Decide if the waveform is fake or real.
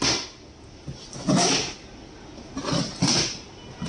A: real